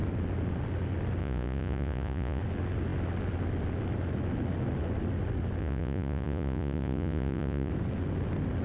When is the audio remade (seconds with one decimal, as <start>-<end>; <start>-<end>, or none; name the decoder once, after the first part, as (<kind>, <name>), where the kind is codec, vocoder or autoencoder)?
1.2-2.4 (vocoder, Vocos); 5.6-7.7